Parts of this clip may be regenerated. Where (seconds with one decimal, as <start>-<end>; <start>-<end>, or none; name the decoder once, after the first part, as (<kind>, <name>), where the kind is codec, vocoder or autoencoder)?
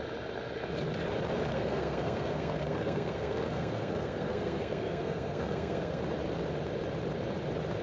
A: 1.5-6.0 (codec, SNAC)